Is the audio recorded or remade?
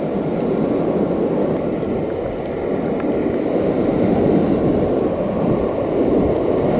recorded